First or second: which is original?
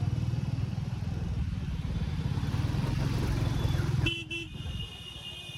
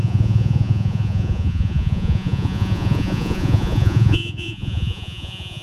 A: first